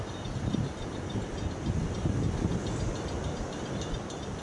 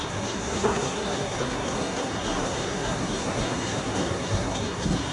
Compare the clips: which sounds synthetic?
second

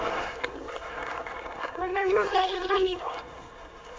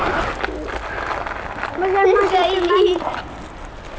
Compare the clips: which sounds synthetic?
first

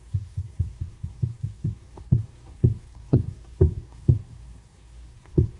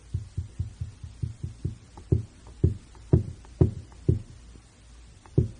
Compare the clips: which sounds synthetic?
first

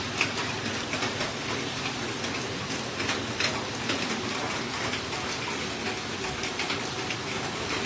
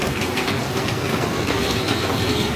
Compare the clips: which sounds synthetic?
second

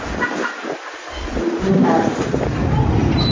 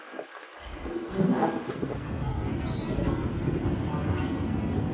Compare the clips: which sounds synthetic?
second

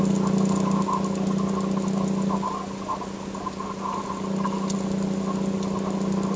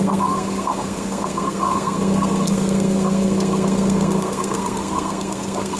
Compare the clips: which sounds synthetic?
second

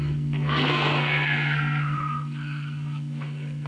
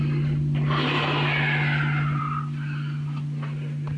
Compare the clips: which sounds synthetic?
first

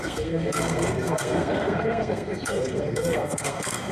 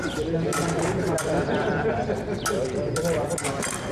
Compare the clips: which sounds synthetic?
first